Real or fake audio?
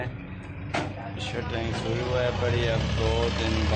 real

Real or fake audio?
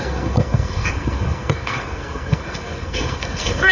fake